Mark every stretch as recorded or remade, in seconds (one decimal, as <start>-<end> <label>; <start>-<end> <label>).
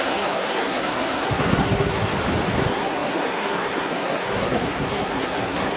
0.0-2.1 remade; 2.1-2.6 recorded; 2.6-5.8 remade